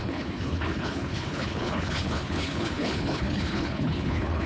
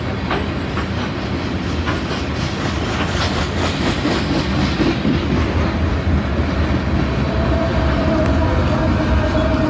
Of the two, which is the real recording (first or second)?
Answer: second